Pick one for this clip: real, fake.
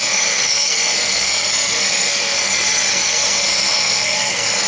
fake